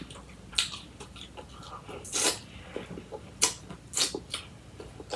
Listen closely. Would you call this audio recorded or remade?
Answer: recorded